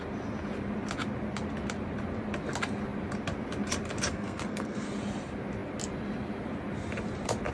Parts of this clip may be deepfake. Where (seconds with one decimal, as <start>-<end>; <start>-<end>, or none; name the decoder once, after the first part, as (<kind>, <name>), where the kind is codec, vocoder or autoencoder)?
4.1-4.9 (codec, SNAC)